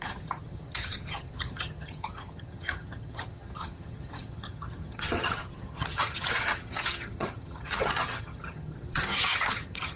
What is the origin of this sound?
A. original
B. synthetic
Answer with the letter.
B